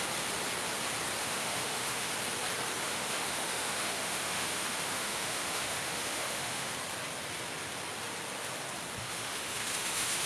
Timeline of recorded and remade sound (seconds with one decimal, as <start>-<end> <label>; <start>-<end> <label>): 0.0-1.2 recorded; 1.2-2.1 remade; 2.1-2.8 recorded; 2.8-6.7 remade; 6.7-9.0 recorded; 9.0-10.3 remade